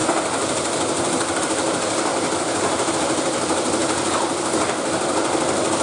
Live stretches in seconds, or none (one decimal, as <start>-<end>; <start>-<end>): 3.8-5.8